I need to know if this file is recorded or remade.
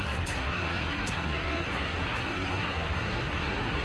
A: remade